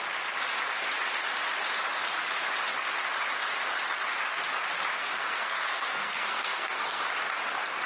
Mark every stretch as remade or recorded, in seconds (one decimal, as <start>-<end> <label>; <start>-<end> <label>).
0.0-5.0 recorded; 5.0-7.0 remade; 7.0-7.9 recorded